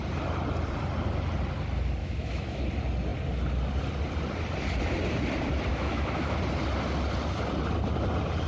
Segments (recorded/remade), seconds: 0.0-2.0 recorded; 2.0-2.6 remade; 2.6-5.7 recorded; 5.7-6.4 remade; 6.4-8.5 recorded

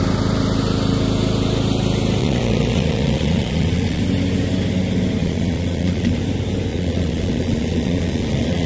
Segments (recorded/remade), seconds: 0.0-2.2 recorded; 2.2-4.0 remade; 4.0-5.2 recorded; 5.2-6.2 remade; 6.2-6.7 recorded; 6.7-8.7 remade

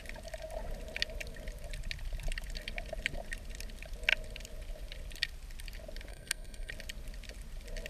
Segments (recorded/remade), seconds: 0.0-6.1 recorded; 6.1-6.7 remade; 6.7-7.9 recorded

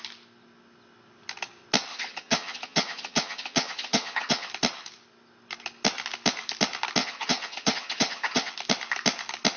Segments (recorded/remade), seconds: 0.0-1.9 recorded; 1.9-4.5 remade; 4.5-7.0 recorded; 7.0-8.5 remade; 8.5-9.6 recorded

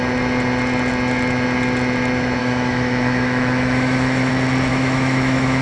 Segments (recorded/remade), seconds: 0.0-2.4 recorded; 2.4-4.3 remade; 4.3-4.7 recorded; 4.7-5.6 remade

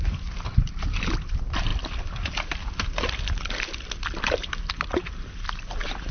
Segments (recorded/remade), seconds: 0.0-6.1 remade

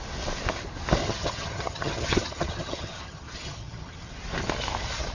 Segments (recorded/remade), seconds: 0.0-1.0 recorded; 1.0-4.1 remade; 4.1-5.1 recorded

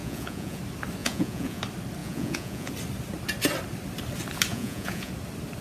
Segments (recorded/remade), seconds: 0.0-0.6 remade; 0.6-1.0 recorded; 1.0-1.6 remade; 1.6-2.0 recorded; 2.0-2.7 remade; 2.7-4.5 recorded; 4.5-5.1 remade; 5.1-5.6 recorded